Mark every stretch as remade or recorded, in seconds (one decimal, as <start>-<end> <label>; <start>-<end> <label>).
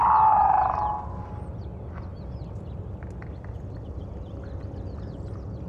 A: 0.0-5.7 recorded